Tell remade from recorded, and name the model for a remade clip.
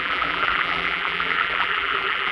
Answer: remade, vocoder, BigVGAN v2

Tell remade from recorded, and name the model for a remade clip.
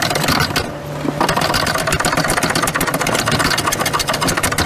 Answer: recorded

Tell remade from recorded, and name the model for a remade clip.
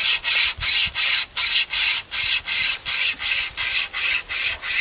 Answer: remade, vocoder, BigVGAN v2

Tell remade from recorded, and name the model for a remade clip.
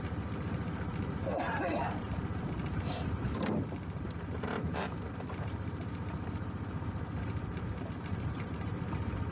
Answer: remade, vocoder, BigVGAN v2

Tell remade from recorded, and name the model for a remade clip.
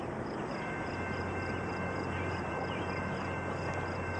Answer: remade, vocoder, BigVGAN v2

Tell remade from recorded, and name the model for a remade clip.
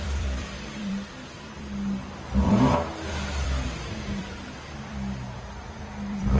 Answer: remade, vocoder, BigVGAN v2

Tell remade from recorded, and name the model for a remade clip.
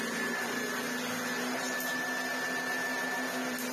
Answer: recorded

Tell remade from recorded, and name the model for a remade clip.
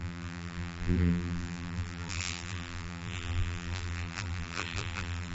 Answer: remade, vocoder, BigVGAN v2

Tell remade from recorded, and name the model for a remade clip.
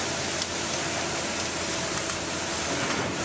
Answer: recorded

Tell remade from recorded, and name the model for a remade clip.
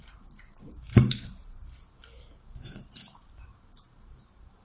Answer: remade, vocoder, BigVGAN v2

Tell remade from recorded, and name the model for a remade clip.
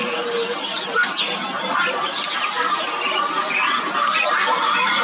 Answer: remade, vocoder, BigVGAN v2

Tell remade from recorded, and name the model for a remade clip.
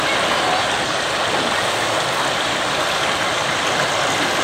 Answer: recorded